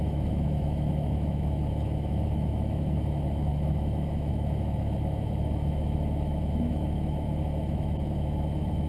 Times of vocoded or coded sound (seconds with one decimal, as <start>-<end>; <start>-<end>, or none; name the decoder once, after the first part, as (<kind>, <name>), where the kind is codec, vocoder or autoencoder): 0.0-8.9 (autoencoder, DAC-VAE)